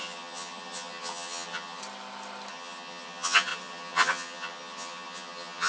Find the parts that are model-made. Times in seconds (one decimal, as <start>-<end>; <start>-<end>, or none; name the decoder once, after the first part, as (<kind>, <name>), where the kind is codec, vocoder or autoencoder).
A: 0.0-1.8 (vocoder, HiFi-GAN); 2.5-5.7